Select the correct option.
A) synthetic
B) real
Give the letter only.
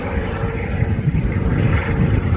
A